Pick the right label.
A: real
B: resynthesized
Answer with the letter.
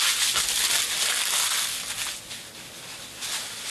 A